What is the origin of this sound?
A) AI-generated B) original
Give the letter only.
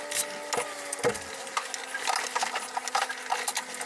B